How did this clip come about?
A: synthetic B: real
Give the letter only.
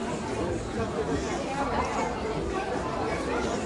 B